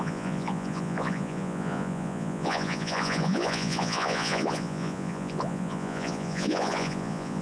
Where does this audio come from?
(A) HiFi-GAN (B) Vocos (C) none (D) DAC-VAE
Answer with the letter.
B